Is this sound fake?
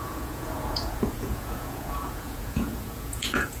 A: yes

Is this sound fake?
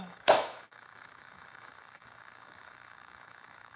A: yes